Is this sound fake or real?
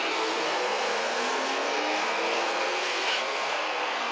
fake